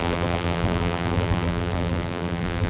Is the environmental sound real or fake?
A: fake